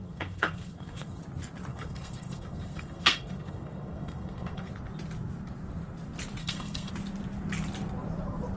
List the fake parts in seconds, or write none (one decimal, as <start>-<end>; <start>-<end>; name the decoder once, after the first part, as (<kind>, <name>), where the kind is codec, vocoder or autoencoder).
0.0-1.2 (codec, SNAC); 1.7-4.7; 6.4-6.9